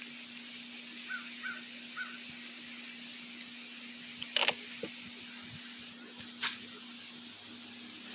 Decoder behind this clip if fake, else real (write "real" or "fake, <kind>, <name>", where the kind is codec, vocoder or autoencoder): real